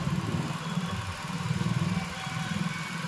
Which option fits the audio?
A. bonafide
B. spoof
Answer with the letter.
A